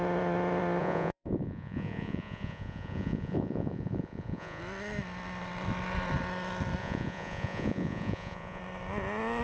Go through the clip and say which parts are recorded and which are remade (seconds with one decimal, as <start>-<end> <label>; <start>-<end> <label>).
0.0-0.8 recorded; 0.8-4.6 remade; 4.6-6.8 recorded; 6.8-8.6 remade; 8.6-9.4 recorded